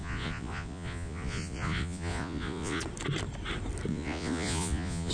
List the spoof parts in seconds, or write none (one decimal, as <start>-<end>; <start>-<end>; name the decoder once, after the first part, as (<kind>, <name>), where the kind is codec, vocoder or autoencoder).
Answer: 0.0-2.8 (vocoder, Vocos); 3.9-5.1